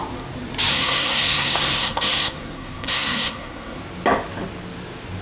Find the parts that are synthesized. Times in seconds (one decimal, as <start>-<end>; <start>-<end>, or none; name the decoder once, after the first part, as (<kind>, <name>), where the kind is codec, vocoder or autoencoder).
0.7-3.8 (codec, SNAC)